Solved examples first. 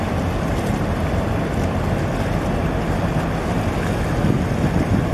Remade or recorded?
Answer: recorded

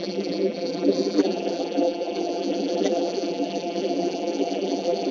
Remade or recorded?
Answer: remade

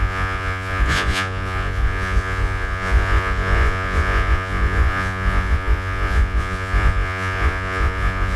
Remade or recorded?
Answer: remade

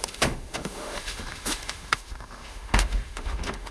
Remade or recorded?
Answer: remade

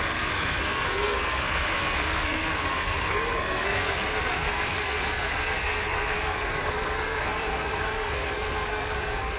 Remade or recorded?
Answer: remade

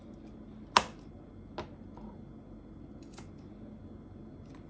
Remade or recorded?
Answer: recorded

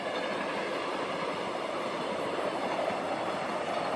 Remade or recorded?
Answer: recorded